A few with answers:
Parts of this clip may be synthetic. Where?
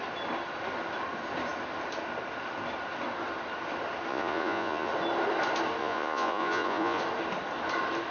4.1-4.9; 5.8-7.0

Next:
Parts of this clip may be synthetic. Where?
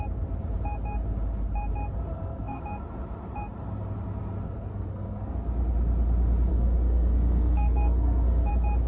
2.1-2.6; 4.7-5.3; 6.5-8.5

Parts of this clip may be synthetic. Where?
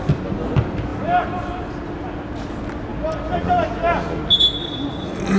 none